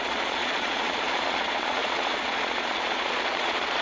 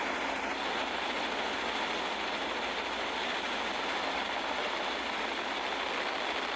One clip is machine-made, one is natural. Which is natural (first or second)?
second